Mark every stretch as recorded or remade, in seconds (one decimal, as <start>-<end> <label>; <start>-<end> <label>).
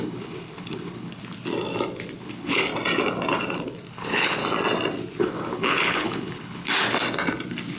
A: 0.0-1.2 remade; 1.2-2.2 recorded; 2.2-2.7 remade; 2.7-3.9 recorded; 3.9-4.4 remade; 4.4-5.2 recorded; 5.2-6.7 remade; 6.7-7.8 recorded